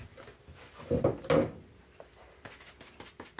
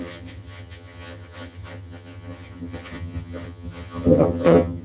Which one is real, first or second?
first